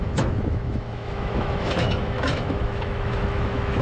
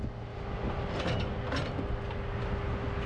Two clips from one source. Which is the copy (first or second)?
first